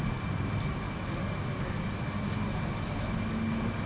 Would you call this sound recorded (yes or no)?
no